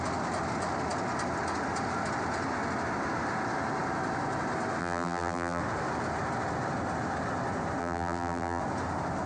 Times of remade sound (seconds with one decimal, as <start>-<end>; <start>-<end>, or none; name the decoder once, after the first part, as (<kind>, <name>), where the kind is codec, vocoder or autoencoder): 4.8-5.6 (vocoder, BigVGAN v2); 7.8-8.6

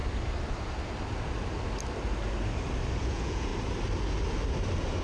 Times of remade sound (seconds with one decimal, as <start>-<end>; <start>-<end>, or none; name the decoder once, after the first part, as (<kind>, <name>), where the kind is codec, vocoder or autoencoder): 3.0-3.5 (vocoder, Vocos)

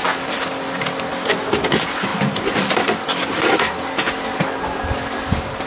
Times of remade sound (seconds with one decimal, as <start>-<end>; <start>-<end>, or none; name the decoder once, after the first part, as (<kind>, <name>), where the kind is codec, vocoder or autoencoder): none

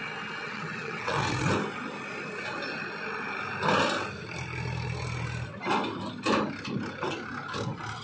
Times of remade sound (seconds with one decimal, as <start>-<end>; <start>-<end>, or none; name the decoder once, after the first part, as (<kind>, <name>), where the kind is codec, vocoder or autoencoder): 0.4-1.5 (vocoder, WaveNeXt)